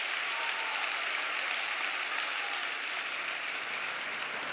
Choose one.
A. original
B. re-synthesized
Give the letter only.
A